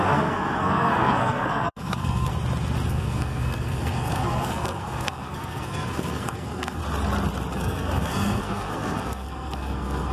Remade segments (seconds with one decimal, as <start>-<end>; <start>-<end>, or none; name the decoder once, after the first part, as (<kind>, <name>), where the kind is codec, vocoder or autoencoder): 0.0-2.3 (codec, SNAC); 2.9-6.8; 7.5-10.1